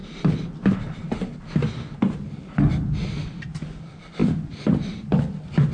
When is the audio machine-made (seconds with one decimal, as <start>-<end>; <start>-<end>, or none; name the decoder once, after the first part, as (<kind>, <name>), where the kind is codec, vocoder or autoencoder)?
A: none